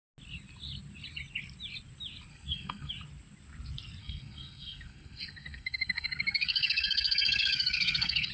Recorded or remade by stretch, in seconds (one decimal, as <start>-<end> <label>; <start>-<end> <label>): 0.0-2.3 recorded; 2.3-2.9 remade; 2.9-4.0 recorded; 4.0-8.3 remade